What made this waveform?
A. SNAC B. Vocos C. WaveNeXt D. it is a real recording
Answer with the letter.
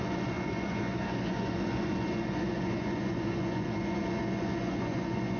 B